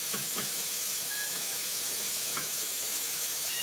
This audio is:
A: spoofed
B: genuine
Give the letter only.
A